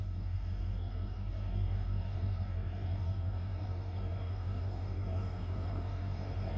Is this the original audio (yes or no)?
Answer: no